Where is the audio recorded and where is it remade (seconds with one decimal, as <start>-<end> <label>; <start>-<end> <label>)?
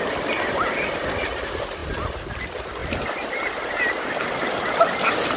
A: 0.0-5.4 recorded